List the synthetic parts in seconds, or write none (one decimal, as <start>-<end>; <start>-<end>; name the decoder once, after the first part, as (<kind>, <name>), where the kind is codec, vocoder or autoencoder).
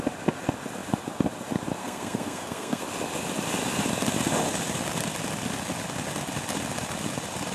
1.8-2.8 (codec, SNAC)